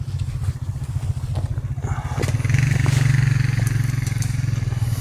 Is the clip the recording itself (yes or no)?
yes